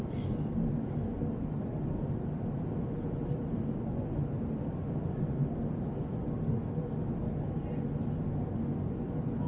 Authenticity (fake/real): real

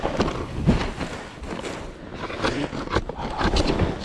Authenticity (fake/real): real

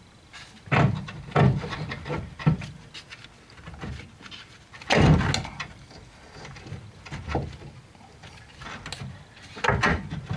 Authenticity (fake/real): real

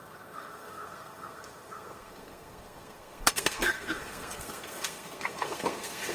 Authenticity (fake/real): fake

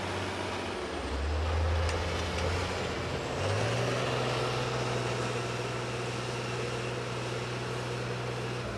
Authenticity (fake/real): real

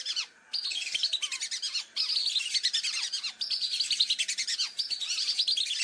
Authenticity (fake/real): real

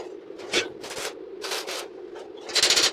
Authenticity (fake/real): real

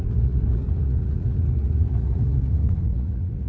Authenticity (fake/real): fake